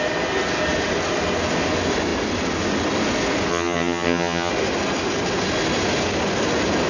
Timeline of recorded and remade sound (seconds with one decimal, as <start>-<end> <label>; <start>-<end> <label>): 0.0-3.5 recorded; 3.5-4.5 remade; 4.5-6.9 recorded